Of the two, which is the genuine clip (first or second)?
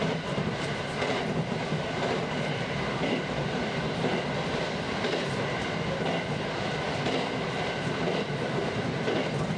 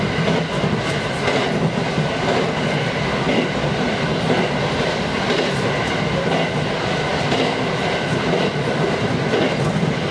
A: second